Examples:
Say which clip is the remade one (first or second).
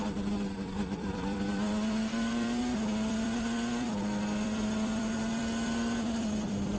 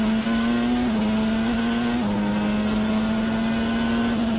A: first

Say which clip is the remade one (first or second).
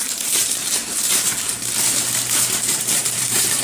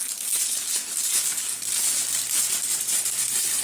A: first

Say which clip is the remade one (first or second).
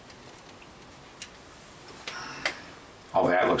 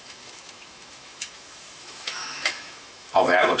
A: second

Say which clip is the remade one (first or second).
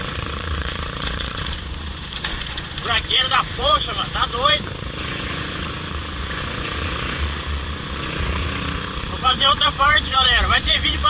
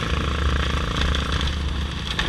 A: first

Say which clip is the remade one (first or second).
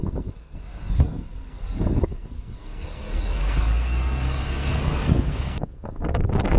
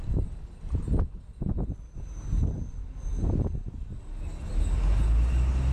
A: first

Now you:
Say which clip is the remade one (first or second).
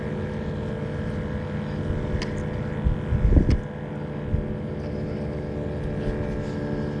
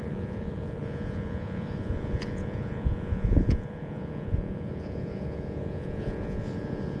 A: second